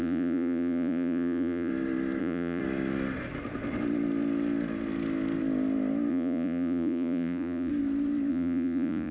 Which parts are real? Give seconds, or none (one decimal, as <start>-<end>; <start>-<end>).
1.7-2.2; 2.6-6.1; 7.7-8.3